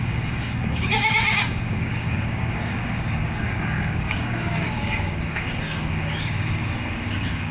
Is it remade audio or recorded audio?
remade